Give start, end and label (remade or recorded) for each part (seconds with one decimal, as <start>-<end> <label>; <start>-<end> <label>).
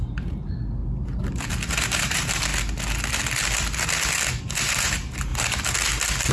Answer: 0.0-0.8 remade; 0.8-1.5 recorded; 1.5-2.5 remade; 2.5-4.4 recorded; 4.4-5.3 remade; 5.3-6.3 recorded